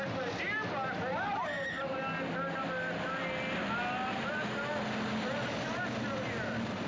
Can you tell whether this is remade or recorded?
recorded